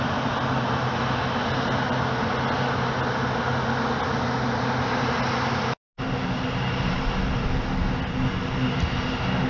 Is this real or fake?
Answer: real